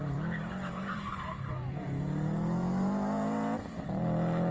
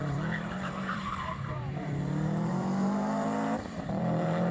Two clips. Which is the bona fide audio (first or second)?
first